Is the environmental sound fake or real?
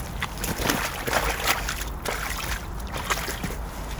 real